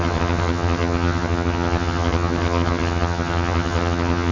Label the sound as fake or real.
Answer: fake